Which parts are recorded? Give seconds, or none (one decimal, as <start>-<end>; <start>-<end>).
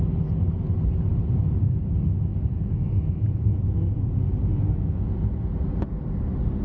0.0-2.3; 5.1-6.6